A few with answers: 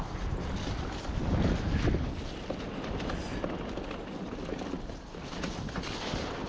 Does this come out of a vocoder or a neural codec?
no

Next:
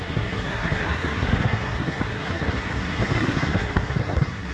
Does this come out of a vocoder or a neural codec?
yes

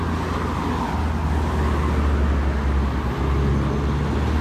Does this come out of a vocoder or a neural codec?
no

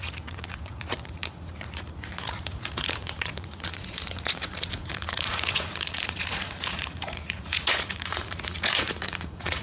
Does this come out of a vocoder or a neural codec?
yes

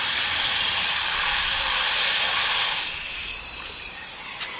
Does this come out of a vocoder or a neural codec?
yes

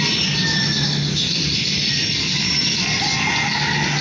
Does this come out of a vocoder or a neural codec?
no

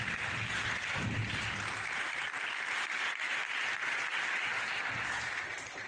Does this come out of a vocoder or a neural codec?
no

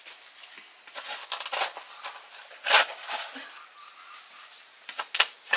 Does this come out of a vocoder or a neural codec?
no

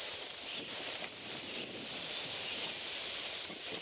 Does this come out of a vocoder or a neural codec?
no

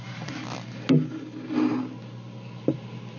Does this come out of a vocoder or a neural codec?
no